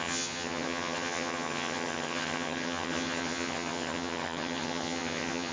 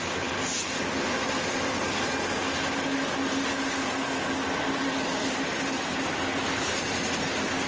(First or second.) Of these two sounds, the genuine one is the second